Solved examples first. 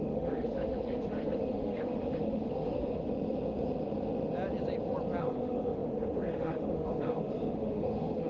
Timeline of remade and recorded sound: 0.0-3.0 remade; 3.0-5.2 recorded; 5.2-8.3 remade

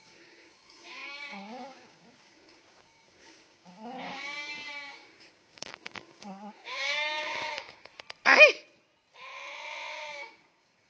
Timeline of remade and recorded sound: 0.0-7.9 remade; 7.9-9.9 recorded; 9.9-10.9 remade